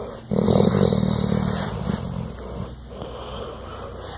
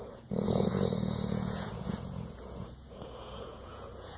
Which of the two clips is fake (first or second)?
second